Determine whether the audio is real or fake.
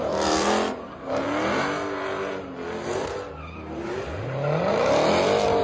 real